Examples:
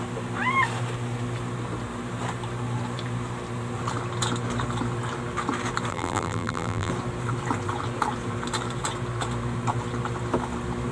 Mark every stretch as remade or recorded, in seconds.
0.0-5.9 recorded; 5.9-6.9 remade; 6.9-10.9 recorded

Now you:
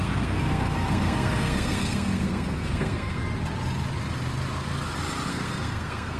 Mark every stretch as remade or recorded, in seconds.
0.0-3.2 remade; 3.2-5.3 recorded; 5.3-6.2 remade

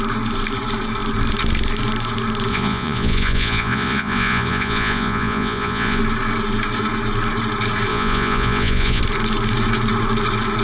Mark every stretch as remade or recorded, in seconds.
0.0-2.5 recorded; 2.5-6.0 remade; 6.0-7.9 recorded; 7.9-9.0 remade; 9.0-10.6 recorded

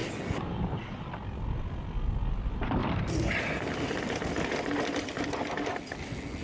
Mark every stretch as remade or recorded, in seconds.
0.0-6.4 recorded

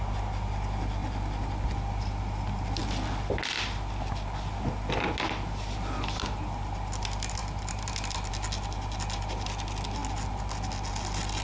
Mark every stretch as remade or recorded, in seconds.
0.0-11.4 recorded

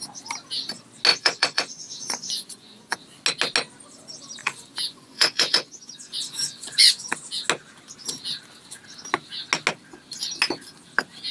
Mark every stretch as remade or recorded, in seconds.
0.0-1.1 recorded; 1.1-3.0 remade; 3.0-4.4 recorded; 4.4-7.1 remade; 7.1-11.3 recorded

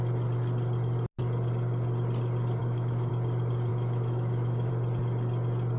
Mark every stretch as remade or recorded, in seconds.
0.0-2.6 recorded; 2.6-3.1 remade; 3.1-3.7 recorded; 3.7-4.7 remade; 4.7-5.8 recorded

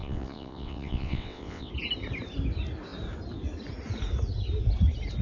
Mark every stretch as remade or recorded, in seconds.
0.0-1.7 remade; 1.7-5.2 recorded